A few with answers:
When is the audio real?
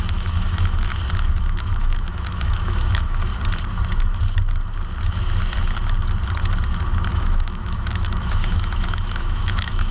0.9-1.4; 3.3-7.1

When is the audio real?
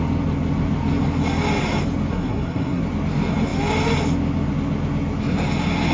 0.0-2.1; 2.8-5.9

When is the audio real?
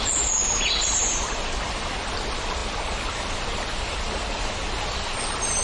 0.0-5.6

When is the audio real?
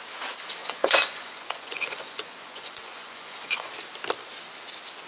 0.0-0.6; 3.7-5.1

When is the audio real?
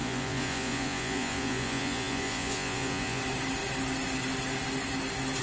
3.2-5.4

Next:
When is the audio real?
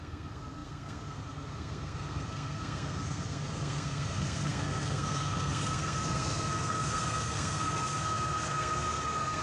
none